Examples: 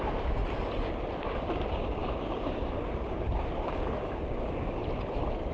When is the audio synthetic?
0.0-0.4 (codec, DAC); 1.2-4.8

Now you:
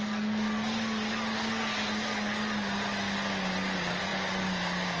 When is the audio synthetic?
none